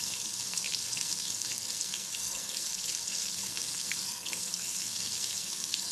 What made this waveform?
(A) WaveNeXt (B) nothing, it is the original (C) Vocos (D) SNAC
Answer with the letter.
D